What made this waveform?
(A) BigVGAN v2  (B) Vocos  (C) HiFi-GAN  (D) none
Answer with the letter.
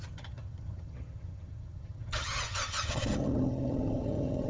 C